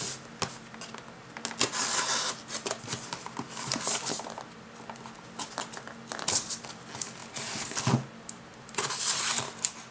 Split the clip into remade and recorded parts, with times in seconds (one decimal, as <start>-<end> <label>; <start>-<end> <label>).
0.0-7.2 recorded; 7.2-7.9 remade; 7.9-8.5 recorded; 8.5-9.5 remade; 9.5-9.9 recorded